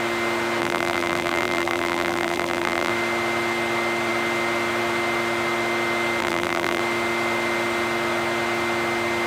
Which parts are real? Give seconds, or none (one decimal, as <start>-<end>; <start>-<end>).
0.0-0.6; 2.9-6.2; 6.8-9.3